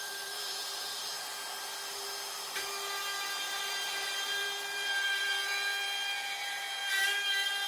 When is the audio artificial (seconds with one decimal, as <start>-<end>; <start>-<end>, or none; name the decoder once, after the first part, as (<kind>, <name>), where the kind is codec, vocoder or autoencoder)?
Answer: 0.0-1.0 (vocoder, BigVGAN v2); 3.6-6.8; 7.3-7.7

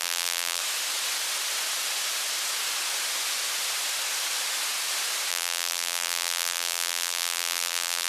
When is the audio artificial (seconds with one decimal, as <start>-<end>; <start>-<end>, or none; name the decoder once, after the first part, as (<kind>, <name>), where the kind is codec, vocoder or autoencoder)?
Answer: 0.0-0.6 (vocoder, BigVGAN v2); 5.3-8.1

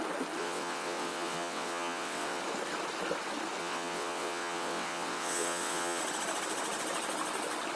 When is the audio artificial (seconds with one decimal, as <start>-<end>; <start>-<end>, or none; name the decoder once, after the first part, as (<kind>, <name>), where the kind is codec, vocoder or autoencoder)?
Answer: 0.4-2.4 (vocoder, WaveNeXt); 3.6-6.0

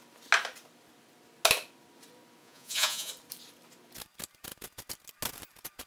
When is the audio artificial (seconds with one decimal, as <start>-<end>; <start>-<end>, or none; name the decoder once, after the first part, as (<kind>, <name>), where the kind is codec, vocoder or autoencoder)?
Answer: 2.4-3.1 (vocoder, Vocos)

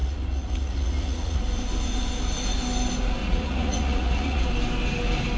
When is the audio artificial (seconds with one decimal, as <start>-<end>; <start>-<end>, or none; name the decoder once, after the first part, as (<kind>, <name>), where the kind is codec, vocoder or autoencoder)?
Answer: 0.0-1.4 (vocoder, Vocos); 3.2-4.5

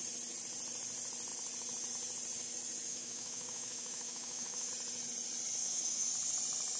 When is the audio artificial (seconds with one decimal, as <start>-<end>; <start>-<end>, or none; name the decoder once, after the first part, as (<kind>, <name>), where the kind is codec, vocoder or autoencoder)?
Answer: 2.9-4.7 (autoencoder, DAC-VAE); 5.6-6.1

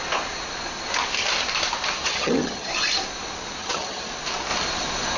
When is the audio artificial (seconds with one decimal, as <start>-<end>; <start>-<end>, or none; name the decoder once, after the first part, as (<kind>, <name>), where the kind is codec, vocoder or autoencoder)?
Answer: 2.0-2.7 (vocoder, HiFi-GAN); 3.6-4.1

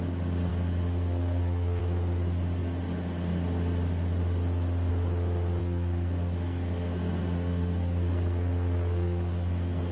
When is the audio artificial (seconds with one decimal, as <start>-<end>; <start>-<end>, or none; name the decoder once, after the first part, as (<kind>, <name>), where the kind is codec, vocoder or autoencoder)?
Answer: 0.5-1.8 (codec, SNAC); 5.6-9.9